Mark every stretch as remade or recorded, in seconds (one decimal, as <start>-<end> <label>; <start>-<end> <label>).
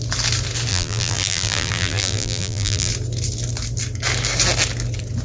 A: 0.0-0.7 recorded; 0.7-2.9 remade; 2.9-5.2 recorded